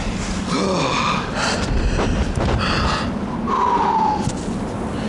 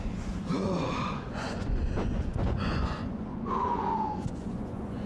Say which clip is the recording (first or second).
first